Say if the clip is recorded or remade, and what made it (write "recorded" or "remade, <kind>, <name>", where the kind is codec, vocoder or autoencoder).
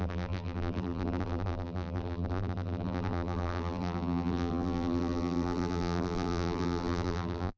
remade, vocoder, BigVGAN v2